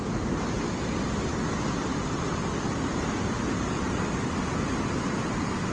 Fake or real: real